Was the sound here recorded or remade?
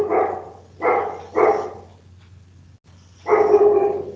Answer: recorded